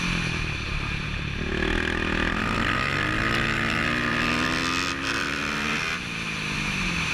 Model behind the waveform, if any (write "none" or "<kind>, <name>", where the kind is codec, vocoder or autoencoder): none